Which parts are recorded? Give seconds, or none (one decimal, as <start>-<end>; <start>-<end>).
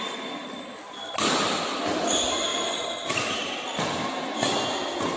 0.0-2.5; 3.1-5.2